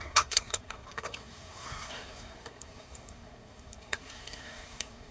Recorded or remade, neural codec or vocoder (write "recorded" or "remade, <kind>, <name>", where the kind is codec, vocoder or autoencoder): remade, codec, SNAC